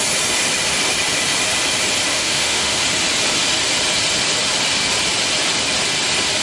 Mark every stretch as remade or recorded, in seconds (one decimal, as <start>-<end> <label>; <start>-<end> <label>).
0.0-2.1 recorded; 2.1-2.8 remade; 2.8-6.4 recorded